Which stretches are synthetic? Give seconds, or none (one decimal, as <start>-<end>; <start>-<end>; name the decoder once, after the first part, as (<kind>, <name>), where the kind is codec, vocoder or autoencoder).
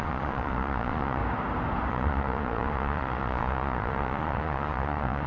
0.0-1.2 (vocoder, Vocos); 1.9-5.3